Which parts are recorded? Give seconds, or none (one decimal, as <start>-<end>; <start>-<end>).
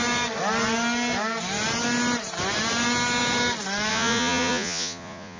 0.0-3.9